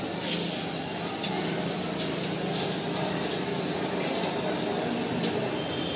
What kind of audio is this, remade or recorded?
recorded